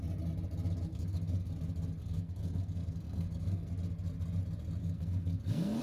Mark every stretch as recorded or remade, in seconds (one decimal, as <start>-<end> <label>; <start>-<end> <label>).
0.0-0.9 recorded; 0.9-1.5 remade; 1.5-2.0 recorded; 2.0-3.7 remade; 3.7-4.8 recorded; 4.8-5.8 remade